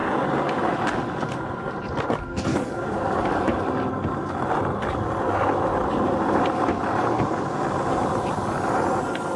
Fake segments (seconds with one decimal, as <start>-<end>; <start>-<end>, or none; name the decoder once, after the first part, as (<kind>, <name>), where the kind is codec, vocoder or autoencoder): 2.5-3.6 (codec, DAC)